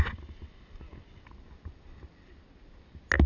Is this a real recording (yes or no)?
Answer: yes